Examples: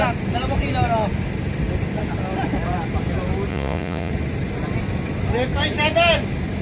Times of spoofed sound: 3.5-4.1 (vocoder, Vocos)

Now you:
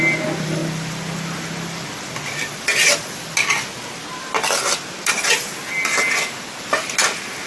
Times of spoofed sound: none

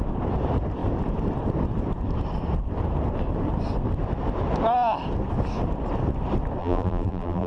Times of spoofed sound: 6.6-7.5 (vocoder, BigVGAN v2)

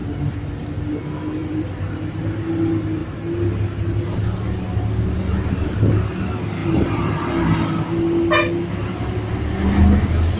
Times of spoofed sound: 1.4-2.2 (vocoder, BigVGAN v2); 6.6-7.3

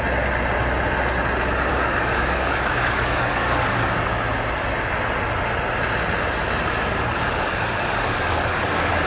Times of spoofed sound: 1.7-4.2 (codec, DAC); 6.9-9.1

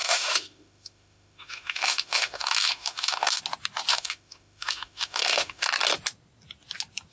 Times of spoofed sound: 0.0-3.4 (autoencoder, DAC-VAE); 3.9-5.7

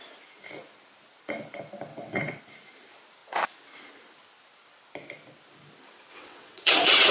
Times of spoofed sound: 1.9-2.4 (vocoder, WaveNeXt); 6.1-7.1

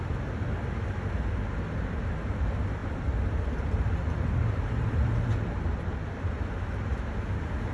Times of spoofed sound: 2.8-6.3 (vocoder, BigVGAN v2)